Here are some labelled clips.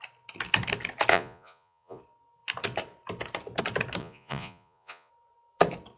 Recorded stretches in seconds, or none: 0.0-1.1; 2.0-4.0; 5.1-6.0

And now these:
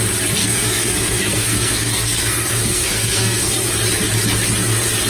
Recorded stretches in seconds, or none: 0.0-0.4; 3.5-5.1